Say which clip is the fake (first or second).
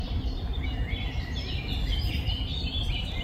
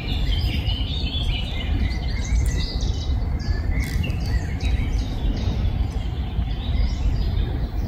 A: second